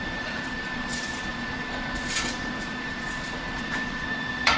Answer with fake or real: fake